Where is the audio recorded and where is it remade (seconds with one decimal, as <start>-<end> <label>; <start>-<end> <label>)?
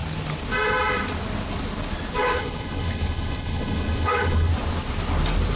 0.0-2.2 recorded; 2.2-4.5 remade; 4.5-5.6 recorded